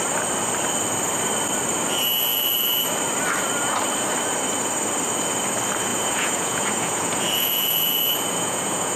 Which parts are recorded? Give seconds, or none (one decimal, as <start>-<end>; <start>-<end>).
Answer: 0.0-5.9